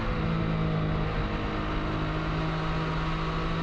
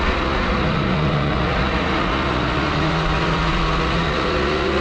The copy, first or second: second